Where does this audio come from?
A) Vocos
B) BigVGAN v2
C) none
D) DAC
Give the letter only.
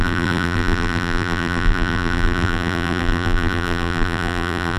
B